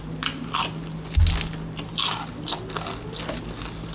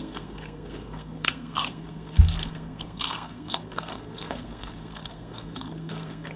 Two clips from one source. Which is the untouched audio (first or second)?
first